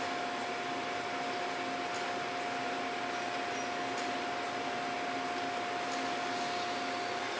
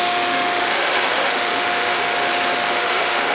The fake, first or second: second